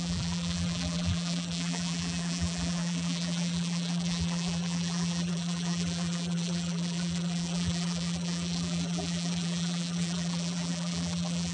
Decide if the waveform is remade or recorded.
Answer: remade